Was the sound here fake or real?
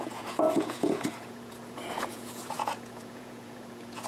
fake